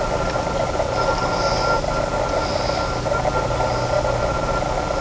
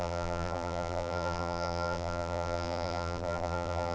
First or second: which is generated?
second